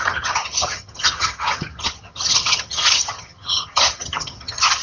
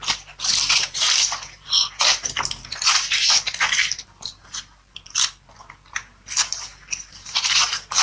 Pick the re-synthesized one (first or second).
first